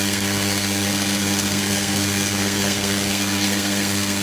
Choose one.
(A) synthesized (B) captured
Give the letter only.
A